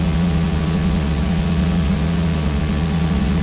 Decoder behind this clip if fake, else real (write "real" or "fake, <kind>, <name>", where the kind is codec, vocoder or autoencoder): fake, vocoder, Vocos